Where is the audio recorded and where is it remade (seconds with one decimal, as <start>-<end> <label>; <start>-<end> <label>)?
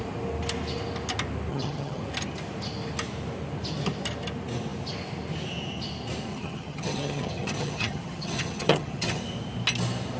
0.0-1.5 recorded; 1.5-2.0 remade; 2.0-6.3 recorded; 6.3-9.2 remade; 9.2-10.2 recorded